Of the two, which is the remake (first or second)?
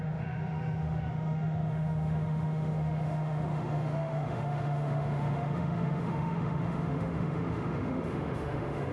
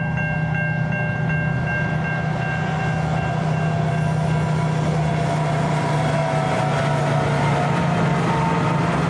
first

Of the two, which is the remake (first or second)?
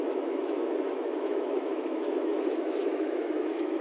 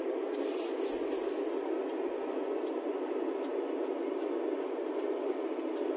first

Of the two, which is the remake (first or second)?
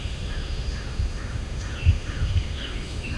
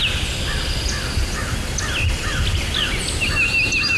first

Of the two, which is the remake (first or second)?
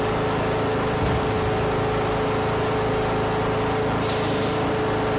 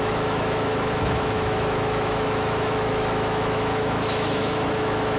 second